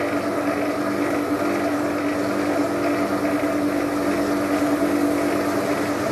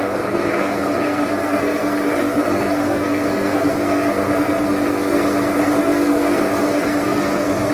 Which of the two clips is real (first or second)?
first